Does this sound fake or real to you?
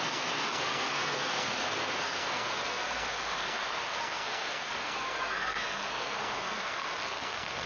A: fake